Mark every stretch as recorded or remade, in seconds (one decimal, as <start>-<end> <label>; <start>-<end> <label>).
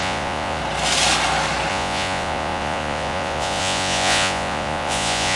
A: 0.0-0.6 remade; 0.6-1.7 recorded; 1.7-5.4 remade